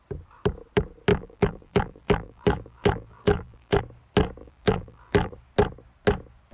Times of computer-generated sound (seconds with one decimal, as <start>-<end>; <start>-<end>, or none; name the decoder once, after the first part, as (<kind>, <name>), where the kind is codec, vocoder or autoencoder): 1.1-3.8 (vocoder, BigVGAN v2); 4.4-5.3